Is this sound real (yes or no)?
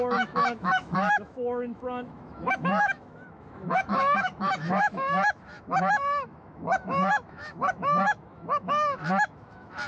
no